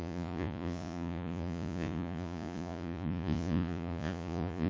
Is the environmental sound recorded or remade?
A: remade